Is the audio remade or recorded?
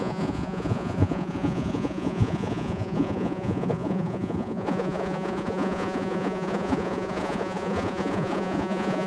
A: remade